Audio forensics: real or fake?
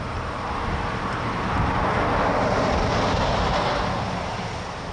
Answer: real